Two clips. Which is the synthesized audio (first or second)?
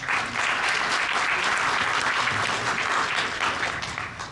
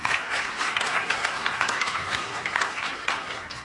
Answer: second